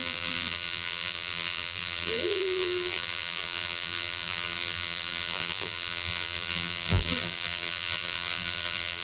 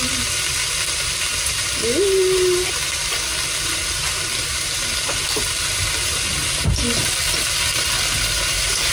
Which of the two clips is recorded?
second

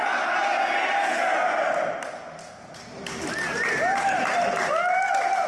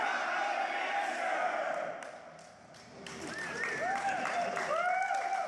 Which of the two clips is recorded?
first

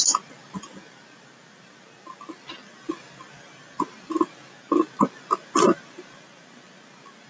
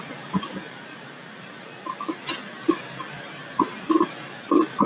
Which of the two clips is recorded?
first